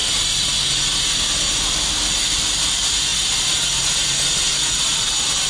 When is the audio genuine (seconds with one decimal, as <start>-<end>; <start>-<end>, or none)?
0.7-3.1; 3.8-5.5